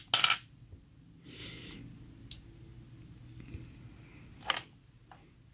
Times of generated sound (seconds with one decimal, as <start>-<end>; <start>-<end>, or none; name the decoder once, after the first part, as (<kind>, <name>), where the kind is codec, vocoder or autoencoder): none